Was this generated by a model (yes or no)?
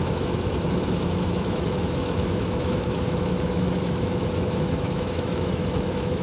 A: yes